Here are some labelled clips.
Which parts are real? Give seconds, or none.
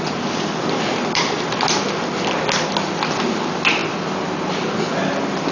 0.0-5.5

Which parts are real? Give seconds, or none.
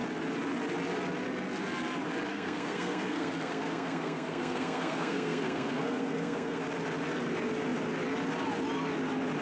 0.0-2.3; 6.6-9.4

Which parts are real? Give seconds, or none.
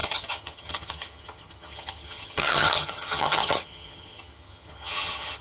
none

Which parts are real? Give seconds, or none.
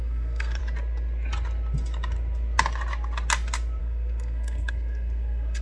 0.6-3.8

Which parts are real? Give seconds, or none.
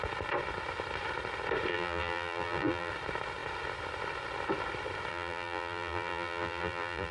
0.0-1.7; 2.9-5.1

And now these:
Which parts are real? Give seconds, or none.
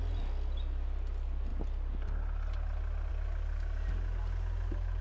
0.0-5.0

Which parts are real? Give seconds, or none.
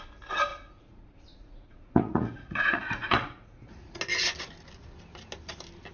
0.0-0.5; 4.0-5.9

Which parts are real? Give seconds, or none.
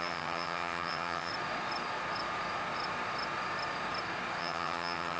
1.3-4.4